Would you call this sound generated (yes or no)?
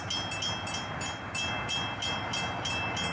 no